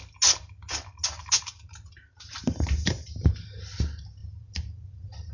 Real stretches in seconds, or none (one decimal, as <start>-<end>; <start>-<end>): 0.0-1.2; 3.6-4.2